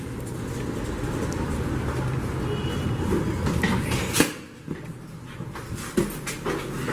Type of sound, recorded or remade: recorded